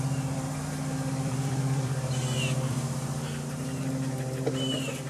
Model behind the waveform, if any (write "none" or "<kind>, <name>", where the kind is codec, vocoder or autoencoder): vocoder, BigVGAN v2